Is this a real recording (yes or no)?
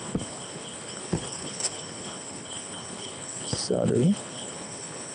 no